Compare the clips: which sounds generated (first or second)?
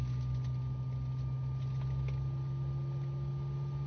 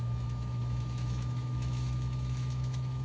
second